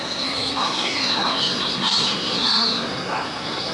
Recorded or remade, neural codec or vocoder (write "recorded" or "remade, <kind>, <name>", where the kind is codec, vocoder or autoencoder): remade, codec, SNAC